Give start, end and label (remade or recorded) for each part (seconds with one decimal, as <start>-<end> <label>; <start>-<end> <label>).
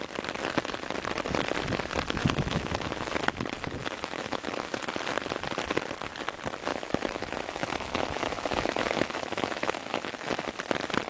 0.0-2.2 recorded; 2.2-3.1 remade; 3.1-3.8 recorded; 3.8-4.8 remade; 4.8-6.7 recorded; 6.7-10.3 remade; 10.3-11.1 recorded